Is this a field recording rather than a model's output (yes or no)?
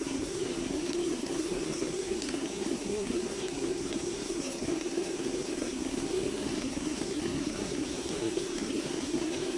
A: no